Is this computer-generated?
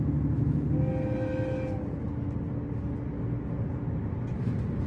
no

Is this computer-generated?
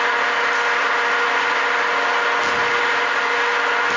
no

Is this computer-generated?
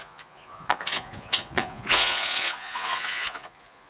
yes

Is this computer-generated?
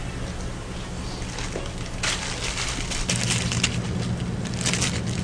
no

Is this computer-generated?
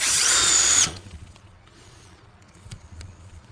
yes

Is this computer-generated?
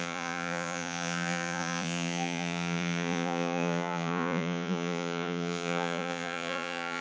yes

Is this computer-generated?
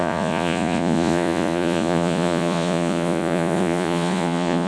yes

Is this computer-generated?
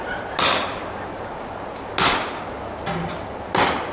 no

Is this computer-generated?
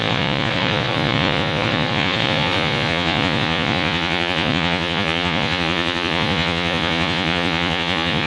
yes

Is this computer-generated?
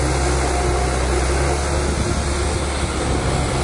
no